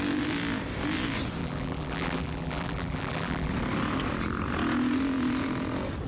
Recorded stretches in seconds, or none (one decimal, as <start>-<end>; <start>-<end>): 0.0-1.4; 3.5-6.1